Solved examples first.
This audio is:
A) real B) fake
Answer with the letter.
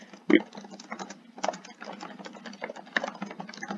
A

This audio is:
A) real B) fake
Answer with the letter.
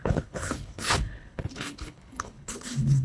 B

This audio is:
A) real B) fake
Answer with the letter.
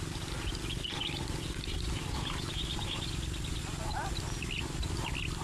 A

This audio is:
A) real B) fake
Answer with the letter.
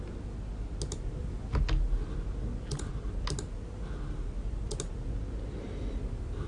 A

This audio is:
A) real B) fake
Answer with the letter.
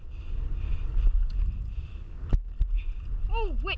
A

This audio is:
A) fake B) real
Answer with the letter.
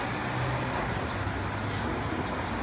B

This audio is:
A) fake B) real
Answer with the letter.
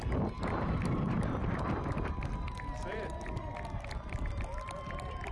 B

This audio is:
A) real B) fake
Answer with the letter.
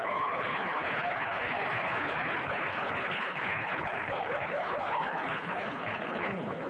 B